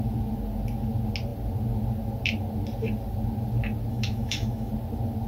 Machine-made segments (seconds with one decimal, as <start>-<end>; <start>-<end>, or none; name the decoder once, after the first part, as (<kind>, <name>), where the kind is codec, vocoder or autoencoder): 3.9-4.7 (autoencoder, DAC-VAE)